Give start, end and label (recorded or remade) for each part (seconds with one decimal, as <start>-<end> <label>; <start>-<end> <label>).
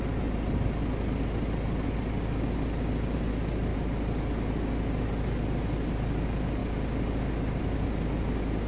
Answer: 0.0-8.7 recorded